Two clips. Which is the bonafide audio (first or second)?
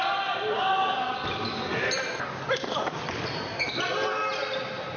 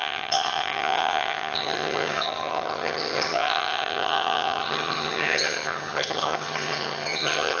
first